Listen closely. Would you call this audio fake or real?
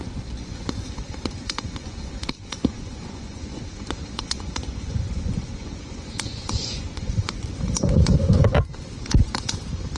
fake